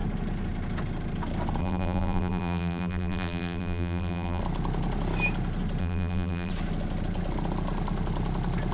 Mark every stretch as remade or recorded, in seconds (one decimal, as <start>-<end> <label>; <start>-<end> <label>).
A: 0.0-1.6 recorded; 1.6-4.4 remade; 4.4-5.8 recorded; 5.8-6.5 remade; 6.5-8.7 recorded